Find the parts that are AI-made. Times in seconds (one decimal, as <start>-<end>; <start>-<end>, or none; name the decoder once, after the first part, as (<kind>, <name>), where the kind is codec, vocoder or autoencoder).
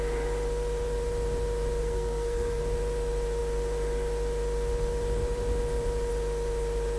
1.8-2.6 (codec, SNAC)